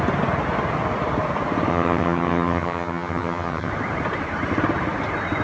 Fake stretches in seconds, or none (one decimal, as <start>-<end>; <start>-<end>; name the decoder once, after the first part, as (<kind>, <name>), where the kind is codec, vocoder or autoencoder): 1.7-3.7 (vocoder, HiFi-GAN)